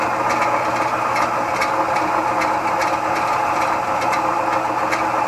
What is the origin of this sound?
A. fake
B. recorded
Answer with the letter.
B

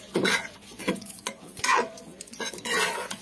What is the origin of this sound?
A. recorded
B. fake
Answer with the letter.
B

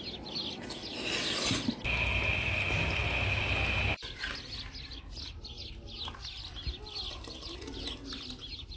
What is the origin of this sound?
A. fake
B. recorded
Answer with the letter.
B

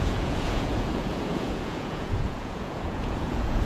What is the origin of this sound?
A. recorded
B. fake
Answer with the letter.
B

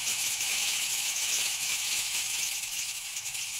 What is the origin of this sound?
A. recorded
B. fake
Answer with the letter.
B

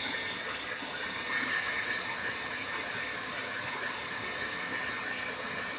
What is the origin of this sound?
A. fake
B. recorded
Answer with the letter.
B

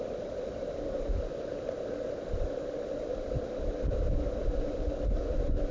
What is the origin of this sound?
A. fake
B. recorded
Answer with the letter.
B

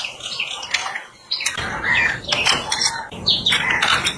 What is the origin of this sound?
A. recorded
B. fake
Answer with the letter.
A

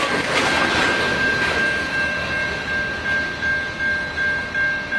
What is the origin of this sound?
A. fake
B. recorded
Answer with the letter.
B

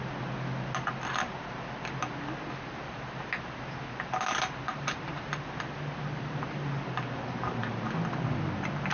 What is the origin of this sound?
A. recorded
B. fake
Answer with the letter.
A